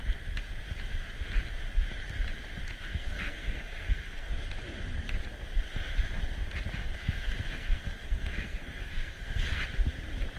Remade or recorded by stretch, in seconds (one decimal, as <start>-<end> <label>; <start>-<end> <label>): 0.0-2.9 recorded; 2.9-4.3 remade; 4.3-6.8 recorded; 6.8-9.6 remade; 9.6-10.4 recorded